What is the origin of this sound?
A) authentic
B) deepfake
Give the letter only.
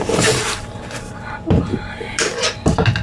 A